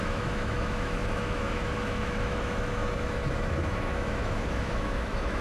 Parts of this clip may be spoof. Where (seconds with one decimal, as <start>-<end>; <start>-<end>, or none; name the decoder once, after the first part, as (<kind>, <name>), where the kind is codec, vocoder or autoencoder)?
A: 0.0-5.4 (autoencoder, DAC-VAE)